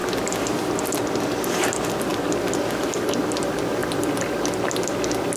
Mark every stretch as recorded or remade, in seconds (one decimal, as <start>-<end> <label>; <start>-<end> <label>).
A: 0.0-3.8 recorded; 3.8-4.3 remade; 4.3-5.4 recorded